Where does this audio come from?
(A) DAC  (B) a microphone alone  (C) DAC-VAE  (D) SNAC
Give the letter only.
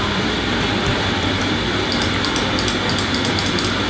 B